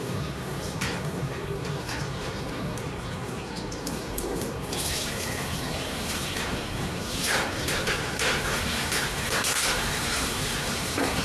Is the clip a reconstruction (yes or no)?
yes